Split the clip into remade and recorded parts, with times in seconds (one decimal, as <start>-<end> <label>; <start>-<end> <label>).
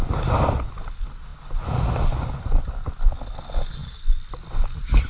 0.0-5.1 recorded